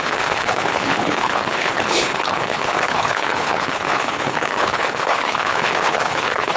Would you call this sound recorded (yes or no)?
no